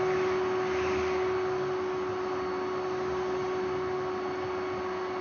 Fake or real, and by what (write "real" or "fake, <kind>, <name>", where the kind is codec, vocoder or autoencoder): real